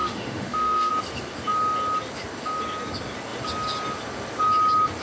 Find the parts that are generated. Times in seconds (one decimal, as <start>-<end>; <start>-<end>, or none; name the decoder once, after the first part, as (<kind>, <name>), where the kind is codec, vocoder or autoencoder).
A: 0.0-0.9 (autoencoder, DAC-VAE)

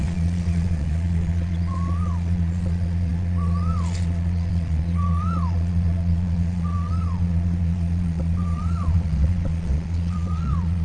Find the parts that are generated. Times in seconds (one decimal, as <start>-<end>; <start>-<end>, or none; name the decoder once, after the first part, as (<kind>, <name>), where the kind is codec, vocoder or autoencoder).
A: 0.0-10.8 (vocoder, Vocos)

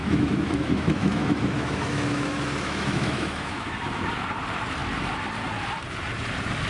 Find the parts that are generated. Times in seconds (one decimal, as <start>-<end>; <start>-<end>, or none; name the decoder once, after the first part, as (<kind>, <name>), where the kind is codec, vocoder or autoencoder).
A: 0.0-4.0 (autoencoder, DAC-VAE)

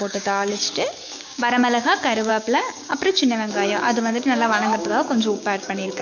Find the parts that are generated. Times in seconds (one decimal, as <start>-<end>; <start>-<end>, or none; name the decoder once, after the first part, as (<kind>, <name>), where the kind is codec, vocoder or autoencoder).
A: 0.0-0.5 (codec, DAC); 1.0-6.0

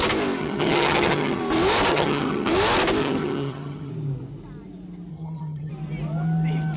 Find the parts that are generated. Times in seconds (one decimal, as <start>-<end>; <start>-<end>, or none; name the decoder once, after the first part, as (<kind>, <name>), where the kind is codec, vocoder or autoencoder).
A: 0.4-1.4 (vocoder, HiFi-GAN); 1.9-2.5; 3.0-3.9; 5.1-5.7